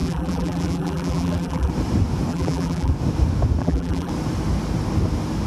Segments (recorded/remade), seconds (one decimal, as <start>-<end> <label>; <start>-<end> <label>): 0.0-1.7 remade; 1.7-2.3 recorded; 2.3-2.9 remade; 2.9-3.6 recorded; 3.6-4.1 remade; 4.1-5.5 recorded